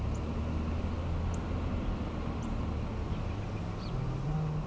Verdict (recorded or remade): recorded